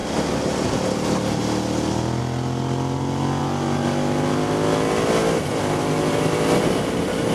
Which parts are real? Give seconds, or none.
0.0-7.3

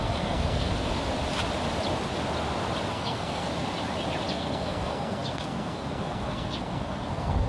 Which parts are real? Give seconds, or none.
0.9-2.9; 3.5-4.3

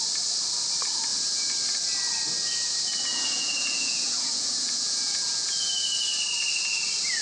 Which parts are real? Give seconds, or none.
0.0-3.1; 5.7-7.2

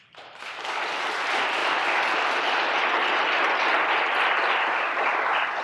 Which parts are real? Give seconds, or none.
0.0-5.6

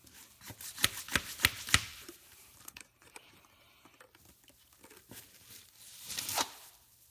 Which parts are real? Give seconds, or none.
0.0-1.9; 3.3-5.0

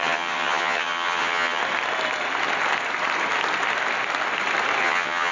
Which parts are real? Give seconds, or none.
1.6-4.8

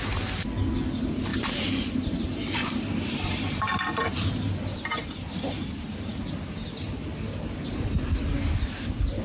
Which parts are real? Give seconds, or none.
0.0-1.3; 6.3-9.2